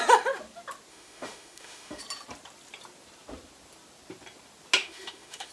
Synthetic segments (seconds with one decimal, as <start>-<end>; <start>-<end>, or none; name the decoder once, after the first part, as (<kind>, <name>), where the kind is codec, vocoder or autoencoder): 0.9-2.0 (autoencoder, DAC-VAE); 4.8-5.5